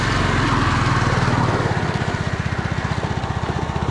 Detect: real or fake real